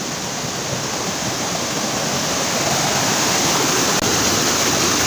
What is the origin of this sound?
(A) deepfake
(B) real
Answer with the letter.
B